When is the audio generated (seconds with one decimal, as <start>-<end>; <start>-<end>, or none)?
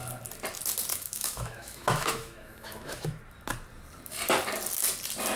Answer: 0.9-3.2